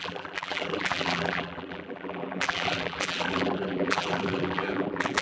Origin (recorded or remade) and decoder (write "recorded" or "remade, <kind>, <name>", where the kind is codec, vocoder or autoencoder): remade, vocoder, BigVGAN v2